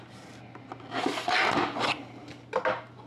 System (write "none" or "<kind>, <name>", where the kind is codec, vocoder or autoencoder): none